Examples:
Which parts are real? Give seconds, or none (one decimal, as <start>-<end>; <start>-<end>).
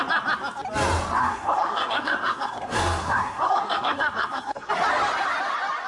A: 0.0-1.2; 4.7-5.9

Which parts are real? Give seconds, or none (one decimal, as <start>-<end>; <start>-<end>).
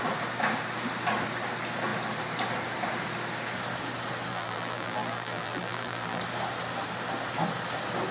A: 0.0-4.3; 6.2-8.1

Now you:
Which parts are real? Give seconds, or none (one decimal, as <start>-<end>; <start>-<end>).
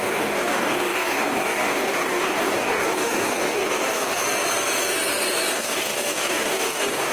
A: 4.2-5.5